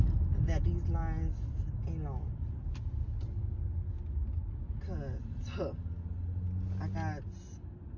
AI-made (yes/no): no